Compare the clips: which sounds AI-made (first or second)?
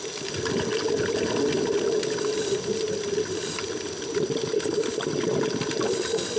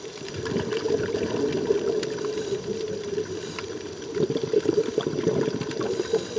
second